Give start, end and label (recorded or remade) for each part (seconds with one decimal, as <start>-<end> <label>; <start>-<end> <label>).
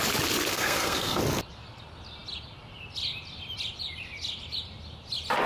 0.0-0.5 recorded; 0.5-1.2 remade; 1.2-5.5 recorded